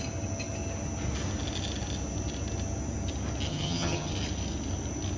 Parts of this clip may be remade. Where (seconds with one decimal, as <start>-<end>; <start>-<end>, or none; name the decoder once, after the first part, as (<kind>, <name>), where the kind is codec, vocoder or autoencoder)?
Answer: 3.5-4.1 (vocoder, HiFi-GAN)